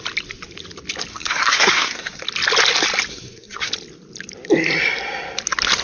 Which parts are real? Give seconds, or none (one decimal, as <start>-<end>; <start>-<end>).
0.0-1.1; 2.2-3.1; 3.7-5.8